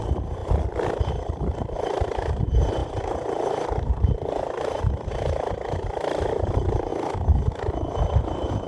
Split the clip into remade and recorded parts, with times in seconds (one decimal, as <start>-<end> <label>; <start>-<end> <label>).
0.0-0.4 recorded; 0.4-1.0 remade; 1.0-8.7 recorded